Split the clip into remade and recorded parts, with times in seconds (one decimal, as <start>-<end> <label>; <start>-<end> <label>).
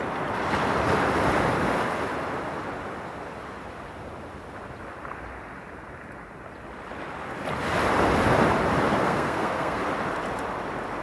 0.0-8.9 recorded; 8.9-9.8 remade; 9.8-11.0 recorded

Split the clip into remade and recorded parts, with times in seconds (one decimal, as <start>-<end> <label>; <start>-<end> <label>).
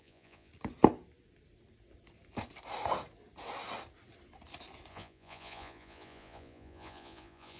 0.0-0.5 remade; 0.5-4.9 recorded; 4.9-7.6 remade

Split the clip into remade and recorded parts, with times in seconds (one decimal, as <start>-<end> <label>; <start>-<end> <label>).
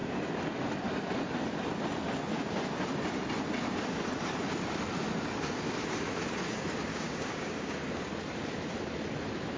0.0-6.9 recorded; 6.9-8.1 remade; 8.1-9.6 recorded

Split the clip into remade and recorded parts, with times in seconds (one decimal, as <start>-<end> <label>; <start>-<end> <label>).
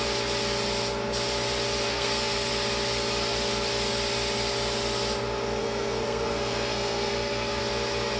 0.0-1.9 recorded; 1.9-2.5 remade; 2.5-5.6 recorded; 5.6-7.6 remade; 7.6-8.2 recorded